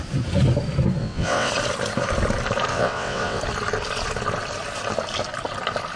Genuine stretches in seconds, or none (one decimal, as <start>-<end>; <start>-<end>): 0.0-1.0; 1.5-2.7; 3.4-6.0